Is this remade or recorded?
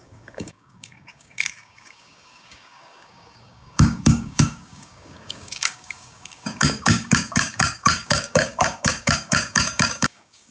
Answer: remade